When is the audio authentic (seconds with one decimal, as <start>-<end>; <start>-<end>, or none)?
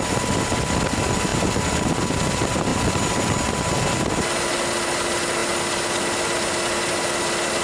0.0-7.6